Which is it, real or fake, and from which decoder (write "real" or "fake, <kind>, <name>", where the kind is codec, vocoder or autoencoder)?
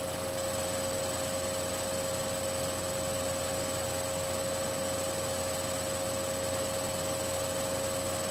real